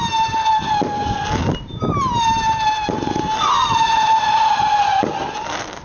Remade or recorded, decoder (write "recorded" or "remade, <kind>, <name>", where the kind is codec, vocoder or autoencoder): recorded